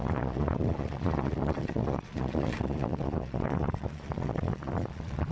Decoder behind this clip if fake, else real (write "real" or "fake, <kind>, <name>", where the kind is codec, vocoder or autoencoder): fake, vocoder, Vocos